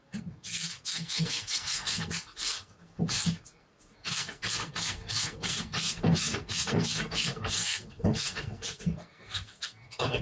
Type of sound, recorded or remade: remade